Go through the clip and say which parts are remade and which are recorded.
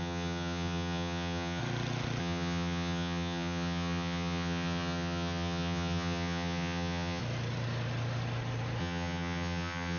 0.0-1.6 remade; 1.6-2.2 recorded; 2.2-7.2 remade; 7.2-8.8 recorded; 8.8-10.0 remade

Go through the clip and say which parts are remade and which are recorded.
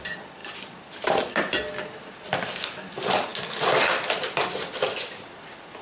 0.0-5.8 recorded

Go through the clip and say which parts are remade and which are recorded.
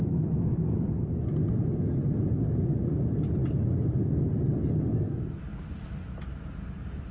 0.0-7.1 recorded